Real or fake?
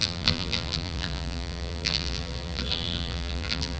fake